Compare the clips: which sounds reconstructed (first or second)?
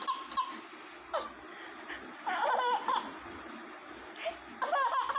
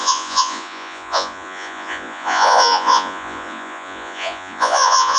second